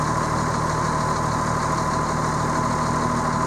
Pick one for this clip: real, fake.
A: real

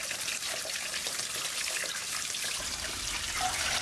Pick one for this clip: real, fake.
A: real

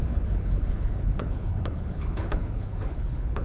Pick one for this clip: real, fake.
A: fake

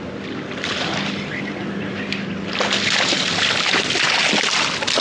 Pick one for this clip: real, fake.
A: real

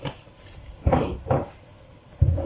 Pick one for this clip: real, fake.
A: real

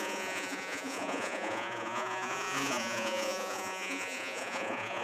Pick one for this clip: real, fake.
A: fake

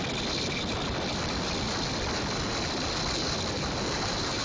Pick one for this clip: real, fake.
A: real